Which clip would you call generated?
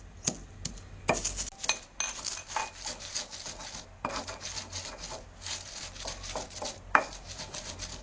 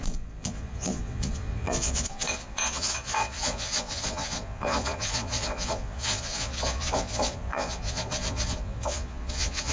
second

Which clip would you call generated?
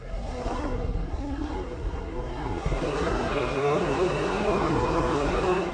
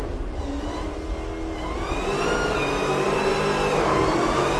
first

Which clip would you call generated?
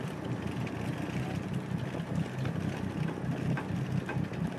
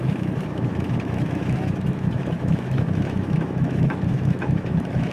second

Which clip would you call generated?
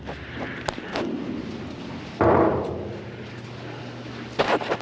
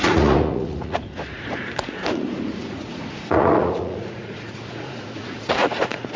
second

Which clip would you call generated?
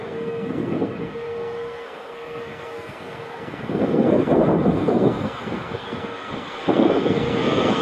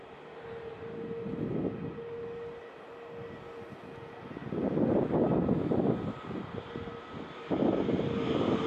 first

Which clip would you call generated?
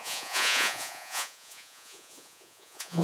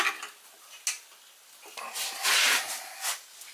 first